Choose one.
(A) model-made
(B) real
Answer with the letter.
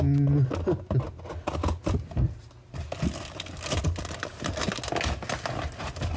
B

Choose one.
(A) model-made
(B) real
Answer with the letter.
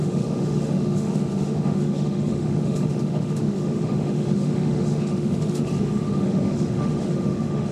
A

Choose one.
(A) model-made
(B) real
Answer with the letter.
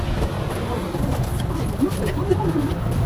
B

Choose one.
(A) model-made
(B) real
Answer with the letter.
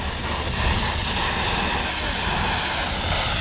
B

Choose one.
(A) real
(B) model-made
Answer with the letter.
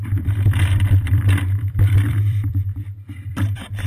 B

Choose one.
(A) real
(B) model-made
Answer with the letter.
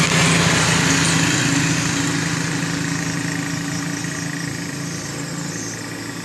A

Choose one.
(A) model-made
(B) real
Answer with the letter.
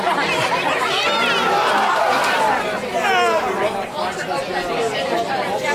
B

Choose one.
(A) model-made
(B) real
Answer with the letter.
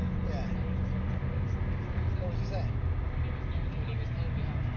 B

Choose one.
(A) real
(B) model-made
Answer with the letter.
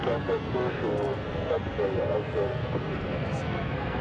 B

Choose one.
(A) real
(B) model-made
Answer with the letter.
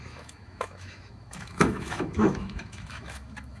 B